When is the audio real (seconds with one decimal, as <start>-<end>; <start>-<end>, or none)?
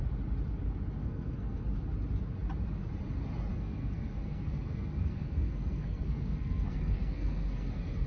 0.0-1.0; 1.6-3.5